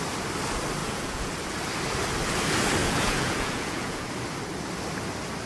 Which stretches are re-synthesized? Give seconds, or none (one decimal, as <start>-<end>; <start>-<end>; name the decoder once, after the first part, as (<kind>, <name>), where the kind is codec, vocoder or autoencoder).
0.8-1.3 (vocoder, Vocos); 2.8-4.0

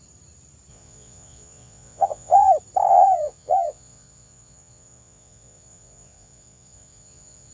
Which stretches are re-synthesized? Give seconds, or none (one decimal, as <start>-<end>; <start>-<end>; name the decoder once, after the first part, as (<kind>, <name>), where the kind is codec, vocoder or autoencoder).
0.7-2.5 (vocoder, Vocos); 2.9-7.5

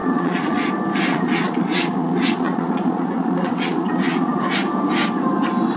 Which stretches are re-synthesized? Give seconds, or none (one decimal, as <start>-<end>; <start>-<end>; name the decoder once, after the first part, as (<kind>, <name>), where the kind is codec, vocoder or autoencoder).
0.0-0.7 (vocoder, Vocos); 1.1-4.4

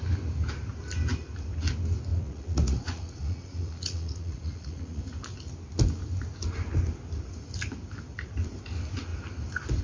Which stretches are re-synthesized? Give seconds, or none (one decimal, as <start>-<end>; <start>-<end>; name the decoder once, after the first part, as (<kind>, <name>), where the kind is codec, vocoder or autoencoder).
2.1-5.0 (vocoder, Vocos)